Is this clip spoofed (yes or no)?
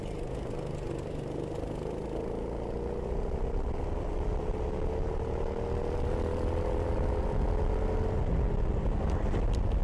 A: no